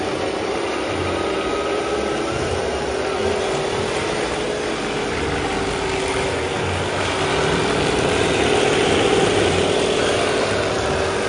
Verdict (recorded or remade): recorded